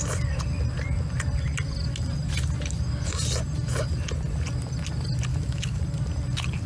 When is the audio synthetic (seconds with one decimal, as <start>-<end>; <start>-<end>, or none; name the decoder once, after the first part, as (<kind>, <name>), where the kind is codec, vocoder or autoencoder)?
5.3-5.8 (autoencoder, DAC-VAE)